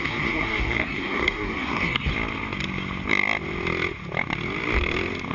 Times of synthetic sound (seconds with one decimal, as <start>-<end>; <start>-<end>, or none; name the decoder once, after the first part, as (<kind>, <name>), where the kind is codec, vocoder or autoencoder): 0.0-2.1 (codec, SNAC)